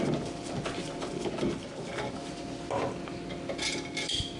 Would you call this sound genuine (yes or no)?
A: yes